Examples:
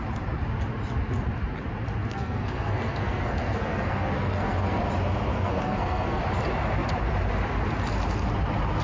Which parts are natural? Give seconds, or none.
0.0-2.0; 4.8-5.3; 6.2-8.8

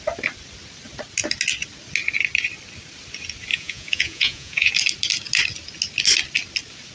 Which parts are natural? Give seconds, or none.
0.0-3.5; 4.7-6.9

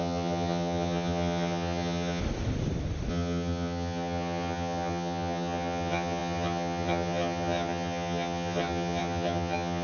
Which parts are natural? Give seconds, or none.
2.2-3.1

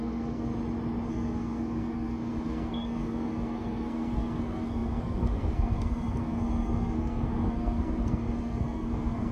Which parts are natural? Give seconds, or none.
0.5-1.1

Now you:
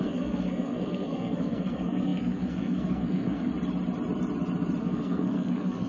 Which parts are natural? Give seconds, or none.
3.5-4.8

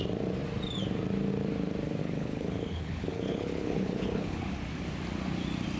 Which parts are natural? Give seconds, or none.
0.0-2.0; 4.5-5.8

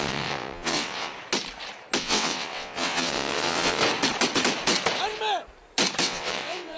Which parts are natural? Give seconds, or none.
1.1-2.0; 3.8-6.0